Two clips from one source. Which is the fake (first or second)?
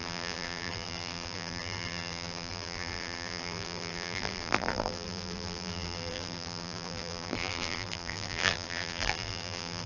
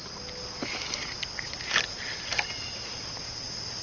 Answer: first